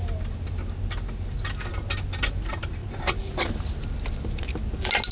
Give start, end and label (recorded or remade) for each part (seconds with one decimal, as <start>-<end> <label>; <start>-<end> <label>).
0.0-5.1 recorded